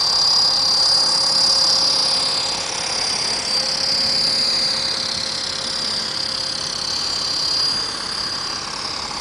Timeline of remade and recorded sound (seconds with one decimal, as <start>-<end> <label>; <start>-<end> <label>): 0.0-9.2 recorded